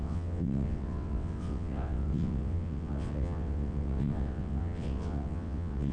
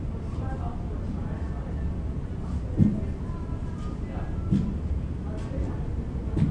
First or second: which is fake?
first